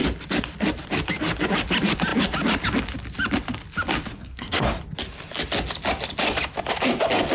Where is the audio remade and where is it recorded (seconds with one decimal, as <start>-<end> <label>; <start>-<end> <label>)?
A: 0.0-4.1 recorded; 4.1-4.8 remade; 4.8-7.3 recorded